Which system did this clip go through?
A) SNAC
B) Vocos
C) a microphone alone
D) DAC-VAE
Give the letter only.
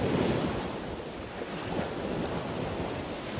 C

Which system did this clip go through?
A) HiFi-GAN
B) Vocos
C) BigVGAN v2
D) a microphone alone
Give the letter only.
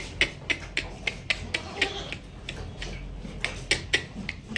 D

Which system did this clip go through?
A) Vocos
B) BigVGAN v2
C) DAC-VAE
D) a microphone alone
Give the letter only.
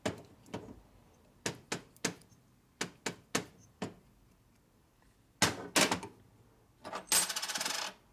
D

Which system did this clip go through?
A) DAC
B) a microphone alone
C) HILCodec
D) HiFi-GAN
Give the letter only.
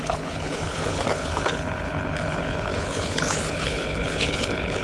C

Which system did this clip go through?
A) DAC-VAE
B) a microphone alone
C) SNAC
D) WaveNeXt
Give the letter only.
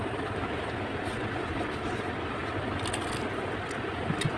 B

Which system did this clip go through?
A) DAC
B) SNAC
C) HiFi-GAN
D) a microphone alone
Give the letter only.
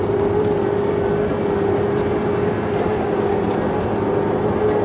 D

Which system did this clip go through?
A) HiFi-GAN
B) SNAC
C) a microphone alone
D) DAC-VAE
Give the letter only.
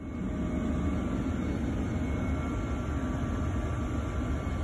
C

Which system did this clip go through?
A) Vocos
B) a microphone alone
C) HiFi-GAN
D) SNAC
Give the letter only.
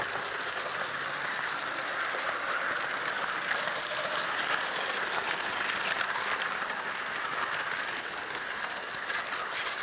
B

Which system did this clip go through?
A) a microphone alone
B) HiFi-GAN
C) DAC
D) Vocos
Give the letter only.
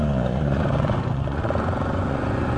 D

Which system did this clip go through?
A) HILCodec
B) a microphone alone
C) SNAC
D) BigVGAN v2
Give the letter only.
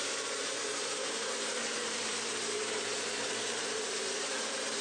D